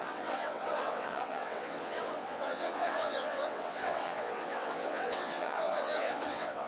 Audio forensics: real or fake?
fake